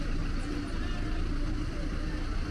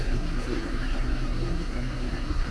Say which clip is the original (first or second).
first